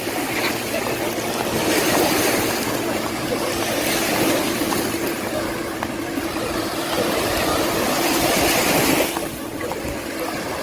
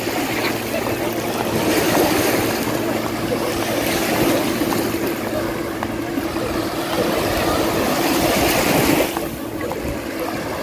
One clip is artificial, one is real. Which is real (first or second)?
second